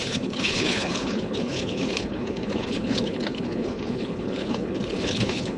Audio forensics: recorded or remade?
remade